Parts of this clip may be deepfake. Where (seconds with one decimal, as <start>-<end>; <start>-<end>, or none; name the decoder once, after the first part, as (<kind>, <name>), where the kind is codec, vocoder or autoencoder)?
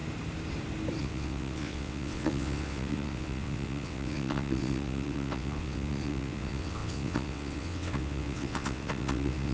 1.0-9.5 (vocoder, WaveNeXt)